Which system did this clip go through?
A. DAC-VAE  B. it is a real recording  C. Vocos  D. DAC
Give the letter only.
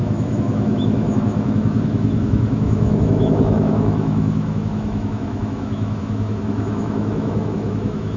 A